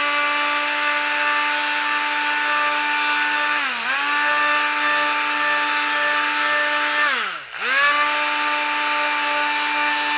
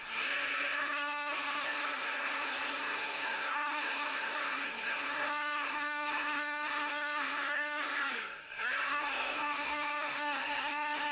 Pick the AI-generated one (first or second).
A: second